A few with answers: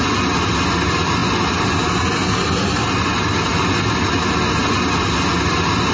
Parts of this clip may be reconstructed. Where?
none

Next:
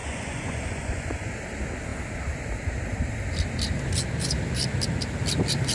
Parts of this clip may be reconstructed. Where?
0.0-1.3